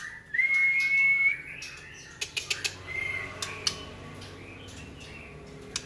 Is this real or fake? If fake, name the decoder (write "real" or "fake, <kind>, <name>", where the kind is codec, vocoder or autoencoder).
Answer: real